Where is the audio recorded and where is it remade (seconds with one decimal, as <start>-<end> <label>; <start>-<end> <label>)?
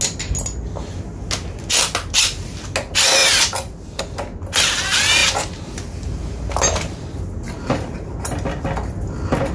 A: 0.0-3.2 recorded; 3.2-4.0 remade; 4.0-5.2 recorded; 5.2-8.1 remade; 8.1-9.5 recorded